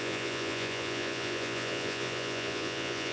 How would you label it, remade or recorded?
remade